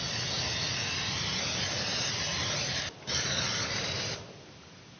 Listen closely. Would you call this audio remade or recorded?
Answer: recorded